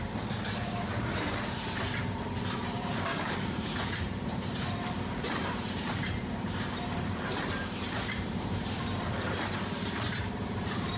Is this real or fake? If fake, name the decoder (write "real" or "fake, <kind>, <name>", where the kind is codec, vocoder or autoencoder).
fake, vocoder, BigVGAN v2